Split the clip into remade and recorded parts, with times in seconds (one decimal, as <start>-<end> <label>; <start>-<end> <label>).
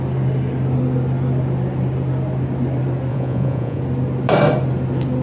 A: 0.0-3.1 recorded; 3.1-3.8 remade; 3.8-5.2 recorded